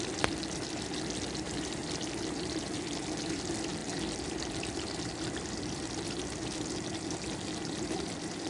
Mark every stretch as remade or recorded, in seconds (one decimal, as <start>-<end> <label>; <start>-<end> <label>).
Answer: 0.0-8.5 remade